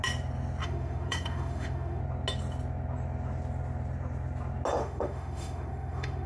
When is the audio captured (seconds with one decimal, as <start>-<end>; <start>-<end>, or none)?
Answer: 0.0-0.6; 2.0-4.8